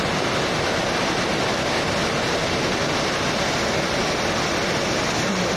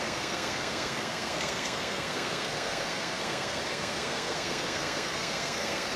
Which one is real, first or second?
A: first